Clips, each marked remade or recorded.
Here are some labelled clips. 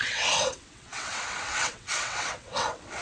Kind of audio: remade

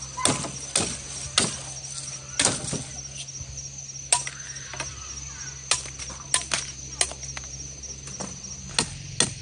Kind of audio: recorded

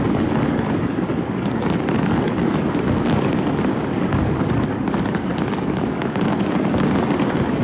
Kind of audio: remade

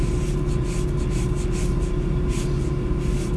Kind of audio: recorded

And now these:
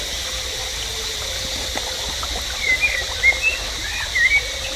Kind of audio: recorded